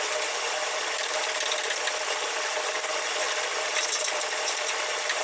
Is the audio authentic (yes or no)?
no